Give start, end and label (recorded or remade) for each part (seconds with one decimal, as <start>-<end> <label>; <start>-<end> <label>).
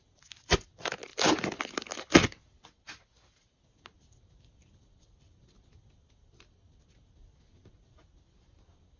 0.0-9.0 recorded